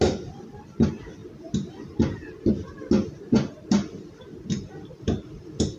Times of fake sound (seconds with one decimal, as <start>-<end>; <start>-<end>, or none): none

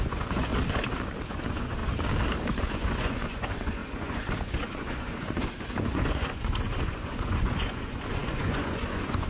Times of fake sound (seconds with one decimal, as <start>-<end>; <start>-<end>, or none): 0.0-0.5; 1.2-1.8; 2.5-9.3

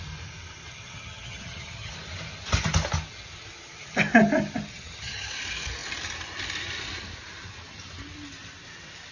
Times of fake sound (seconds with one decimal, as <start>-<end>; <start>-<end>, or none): 0.7-1.9; 4.7-5.3